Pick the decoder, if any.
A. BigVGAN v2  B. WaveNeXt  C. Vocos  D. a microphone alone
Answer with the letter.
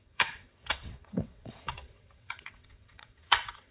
B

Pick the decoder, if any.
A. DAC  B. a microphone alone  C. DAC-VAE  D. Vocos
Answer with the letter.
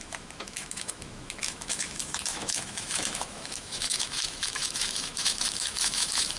C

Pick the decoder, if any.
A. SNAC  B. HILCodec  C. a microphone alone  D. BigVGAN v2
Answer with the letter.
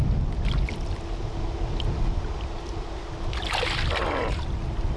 C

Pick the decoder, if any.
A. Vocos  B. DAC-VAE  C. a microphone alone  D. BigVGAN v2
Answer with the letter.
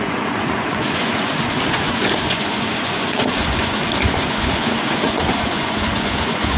A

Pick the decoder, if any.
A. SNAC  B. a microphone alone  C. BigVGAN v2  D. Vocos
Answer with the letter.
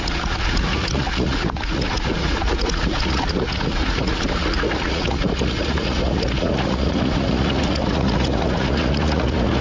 D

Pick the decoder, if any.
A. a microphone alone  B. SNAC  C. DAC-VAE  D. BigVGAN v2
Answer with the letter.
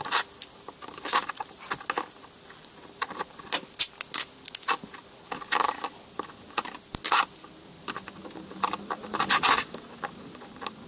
A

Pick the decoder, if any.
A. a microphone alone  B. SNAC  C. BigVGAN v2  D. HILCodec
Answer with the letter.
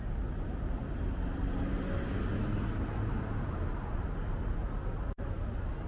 A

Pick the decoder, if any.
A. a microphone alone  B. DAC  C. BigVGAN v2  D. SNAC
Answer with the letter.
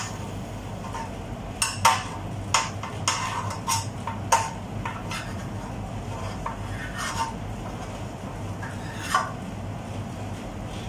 A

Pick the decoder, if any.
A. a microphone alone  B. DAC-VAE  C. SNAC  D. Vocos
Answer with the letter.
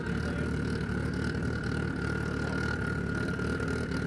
A